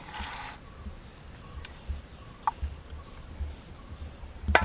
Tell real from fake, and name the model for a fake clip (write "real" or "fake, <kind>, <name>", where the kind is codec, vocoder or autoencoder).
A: real